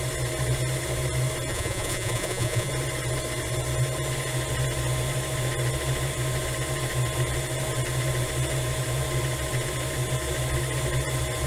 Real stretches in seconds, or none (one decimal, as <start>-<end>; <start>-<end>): 0.0-1.5; 2.7-11.5